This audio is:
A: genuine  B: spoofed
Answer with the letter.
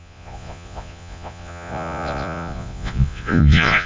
B